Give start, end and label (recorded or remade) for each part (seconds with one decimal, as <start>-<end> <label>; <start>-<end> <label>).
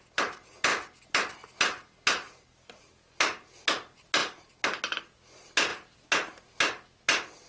0.0-7.5 recorded